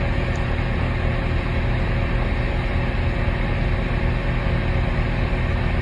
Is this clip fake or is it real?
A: real